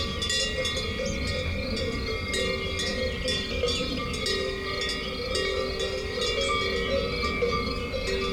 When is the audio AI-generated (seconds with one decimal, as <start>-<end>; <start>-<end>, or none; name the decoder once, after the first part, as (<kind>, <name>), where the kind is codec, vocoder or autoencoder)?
none